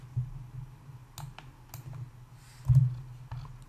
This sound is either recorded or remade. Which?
recorded